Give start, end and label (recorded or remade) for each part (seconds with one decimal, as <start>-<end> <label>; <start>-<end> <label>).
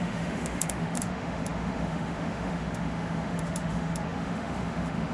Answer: 0.0-5.1 remade